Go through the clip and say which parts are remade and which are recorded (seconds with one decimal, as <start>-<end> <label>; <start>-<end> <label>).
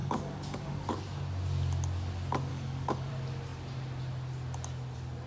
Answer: 0.0-0.9 remade; 0.9-2.5 recorded; 2.5-3.1 remade; 3.1-5.3 recorded